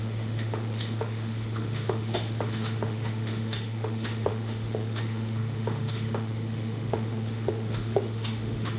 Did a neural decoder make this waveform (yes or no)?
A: yes